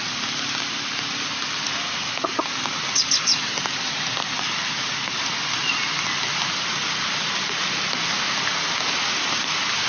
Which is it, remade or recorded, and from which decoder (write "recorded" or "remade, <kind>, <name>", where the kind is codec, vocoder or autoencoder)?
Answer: recorded